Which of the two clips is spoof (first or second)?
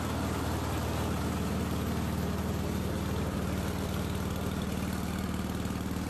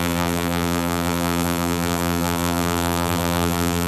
second